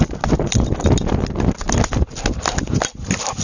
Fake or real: real